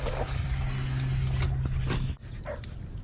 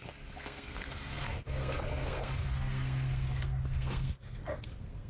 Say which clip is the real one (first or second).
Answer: first